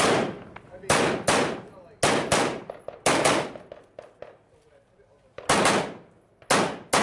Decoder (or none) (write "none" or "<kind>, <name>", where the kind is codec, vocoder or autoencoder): none